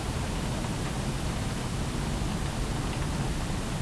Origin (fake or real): real